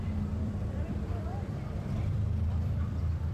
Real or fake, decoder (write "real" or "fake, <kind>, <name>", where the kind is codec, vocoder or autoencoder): fake, vocoder, BigVGAN v2